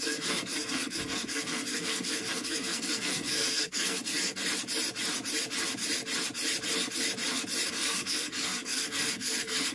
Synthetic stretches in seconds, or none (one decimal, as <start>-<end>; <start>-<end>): 0.0-4.4; 7.7-9.7